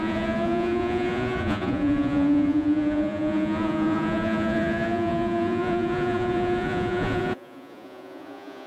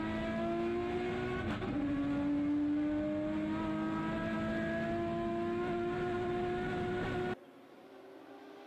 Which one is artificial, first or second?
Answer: first